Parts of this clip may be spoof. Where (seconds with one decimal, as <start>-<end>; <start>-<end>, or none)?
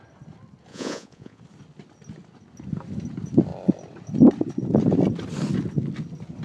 0.7-1.4